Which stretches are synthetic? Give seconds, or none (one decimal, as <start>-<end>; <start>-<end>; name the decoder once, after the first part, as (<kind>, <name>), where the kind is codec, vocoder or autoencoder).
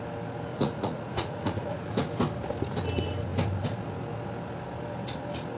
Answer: 0.5-2.1 (vocoder, Vocos)